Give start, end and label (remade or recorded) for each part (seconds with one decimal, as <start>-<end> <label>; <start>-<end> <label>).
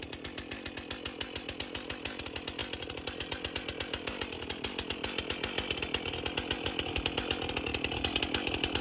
0.0-8.8 recorded